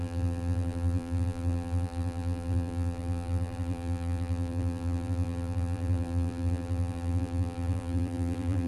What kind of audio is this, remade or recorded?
remade